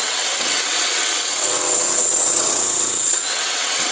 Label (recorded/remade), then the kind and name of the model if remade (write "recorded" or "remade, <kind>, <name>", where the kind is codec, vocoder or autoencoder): remade, vocoder, WaveNeXt